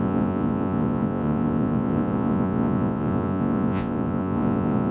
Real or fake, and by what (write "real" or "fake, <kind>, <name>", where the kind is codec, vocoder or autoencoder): fake, vocoder, Vocos